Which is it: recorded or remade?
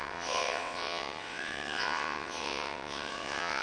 remade